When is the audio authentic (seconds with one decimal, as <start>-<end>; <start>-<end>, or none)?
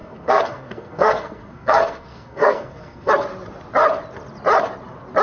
3.1-5.2